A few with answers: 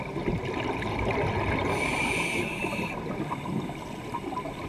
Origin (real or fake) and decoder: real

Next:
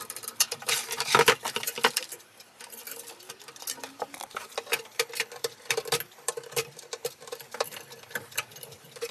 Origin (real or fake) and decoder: fake, vocoder, BigVGAN v2